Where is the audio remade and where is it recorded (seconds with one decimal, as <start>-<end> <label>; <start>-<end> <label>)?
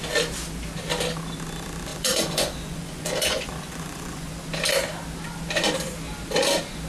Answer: 0.0-1.9 recorded; 1.9-4.3 remade; 4.3-6.9 recorded